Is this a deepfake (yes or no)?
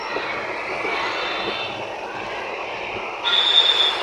no